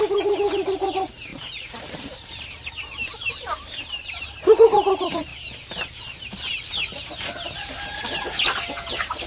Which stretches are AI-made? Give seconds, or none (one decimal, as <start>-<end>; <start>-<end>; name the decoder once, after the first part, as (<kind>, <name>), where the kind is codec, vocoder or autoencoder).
0.0-5.3 (vocoder, BigVGAN v2)